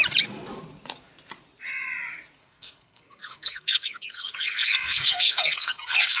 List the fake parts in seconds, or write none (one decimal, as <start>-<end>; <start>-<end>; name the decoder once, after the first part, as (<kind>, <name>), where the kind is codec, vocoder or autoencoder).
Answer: 2.4-6.2 (codec, SNAC)